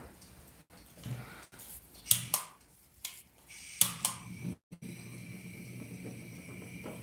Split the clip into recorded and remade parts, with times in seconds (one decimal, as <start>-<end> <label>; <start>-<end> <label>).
0.0-7.0 recorded